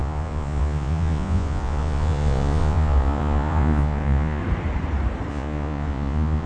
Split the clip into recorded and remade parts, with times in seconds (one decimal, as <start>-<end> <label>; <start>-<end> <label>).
0.0-4.4 remade; 4.4-5.3 recorded; 5.3-6.5 remade